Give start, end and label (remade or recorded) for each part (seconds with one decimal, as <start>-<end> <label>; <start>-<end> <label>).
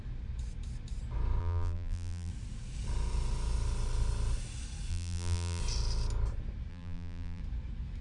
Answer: 0.0-1.4 recorded; 1.4-2.3 remade; 2.3-4.9 recorded; 4.9-5.6 remade; 5.6-6.7 recorded; 6.7-7.4 remade; 7.4-8.0 recorded